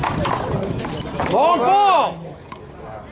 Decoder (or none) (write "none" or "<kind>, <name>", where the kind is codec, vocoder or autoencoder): none